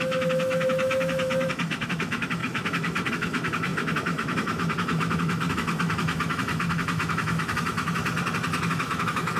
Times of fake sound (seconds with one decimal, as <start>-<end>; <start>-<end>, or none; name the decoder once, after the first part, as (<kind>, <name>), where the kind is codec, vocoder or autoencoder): 0.0-8.0 (autoencoder, DAC-VAE); 8.5-9.4

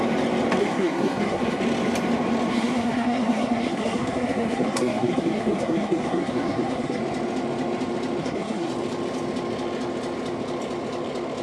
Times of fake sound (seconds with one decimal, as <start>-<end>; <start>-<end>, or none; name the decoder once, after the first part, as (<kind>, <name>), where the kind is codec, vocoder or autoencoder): 0.6-1.6 (codec, SNAC); 2.5-7.0; 8.2-8.7